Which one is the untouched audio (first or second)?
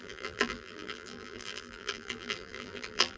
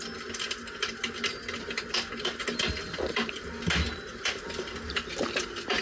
second